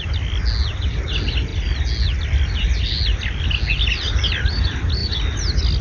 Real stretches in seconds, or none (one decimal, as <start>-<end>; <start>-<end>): 0.0-5.8